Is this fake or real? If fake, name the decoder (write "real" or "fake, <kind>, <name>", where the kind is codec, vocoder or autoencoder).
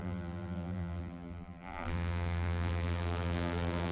fake, vocoder, BigVGAN v2